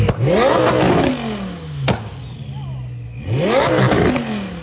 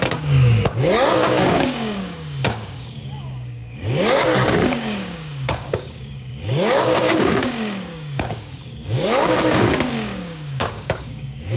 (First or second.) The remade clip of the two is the second